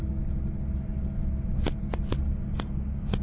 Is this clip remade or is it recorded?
recorded